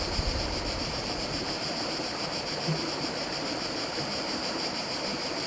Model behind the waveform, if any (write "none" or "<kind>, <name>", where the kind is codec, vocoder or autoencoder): vocoder, BigVGAN v2